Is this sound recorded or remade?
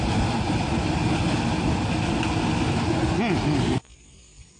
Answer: recorded